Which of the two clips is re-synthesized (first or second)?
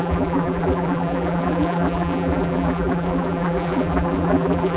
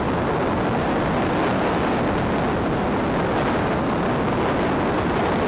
first